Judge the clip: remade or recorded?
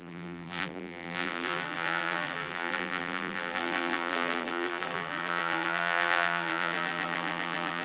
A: remade